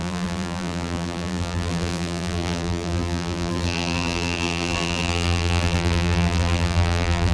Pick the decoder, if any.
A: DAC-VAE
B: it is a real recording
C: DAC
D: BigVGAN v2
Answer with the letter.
D